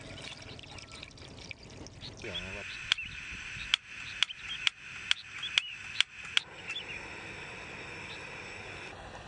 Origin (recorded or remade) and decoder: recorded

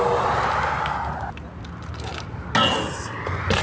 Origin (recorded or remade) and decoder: recorded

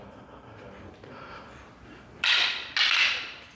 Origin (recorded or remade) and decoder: recorded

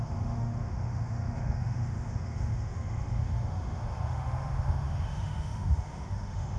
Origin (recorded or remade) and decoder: remade, autoencoder, DAC-VAE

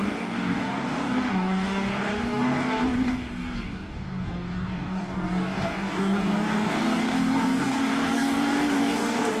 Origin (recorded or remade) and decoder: remade, codec, DAC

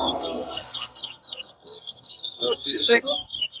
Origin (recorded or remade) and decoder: remade, codec, SNAC